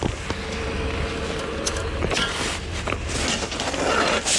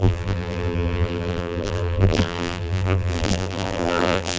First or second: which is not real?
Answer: second